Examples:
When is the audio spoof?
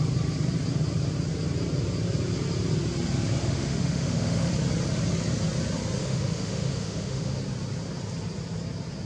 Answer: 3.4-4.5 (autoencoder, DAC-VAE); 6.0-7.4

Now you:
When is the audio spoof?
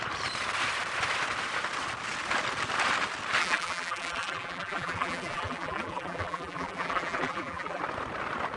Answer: 3.4-7.8 (vocoder, BigVGAN v2)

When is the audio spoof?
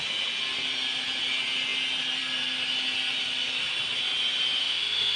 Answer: 4.6-5.2 (autoencoder, DAC-VAE)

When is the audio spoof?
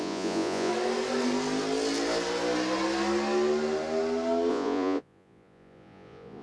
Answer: 0.0-0.7 (vocoder, Vocos); 4.5-6.4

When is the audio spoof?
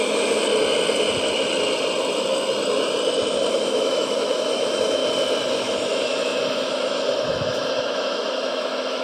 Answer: 0.0-0.5 (autoencoder, DAC-VAE); 3.5-5.0; 5.5-9.0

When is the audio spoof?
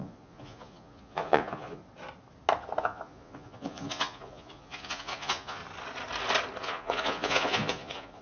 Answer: 0.0-1.8 (vocoder, Vocos); 2.8-5.6; 6.6-8.2